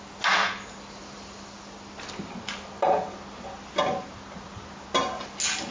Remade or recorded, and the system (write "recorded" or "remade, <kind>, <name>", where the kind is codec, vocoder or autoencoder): recorded